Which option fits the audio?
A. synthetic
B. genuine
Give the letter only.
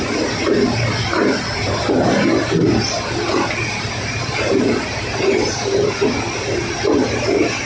B